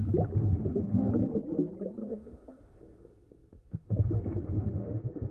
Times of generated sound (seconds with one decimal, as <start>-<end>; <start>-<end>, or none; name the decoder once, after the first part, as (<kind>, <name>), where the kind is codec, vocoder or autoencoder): 0.4-1.1 (autoencoder, DAC-VAE); 2.0-5.3